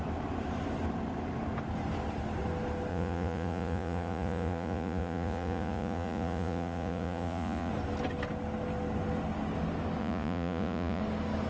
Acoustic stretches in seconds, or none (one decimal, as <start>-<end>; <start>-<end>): 0.0-2.9; 7.7-10.0; 11.0-11.5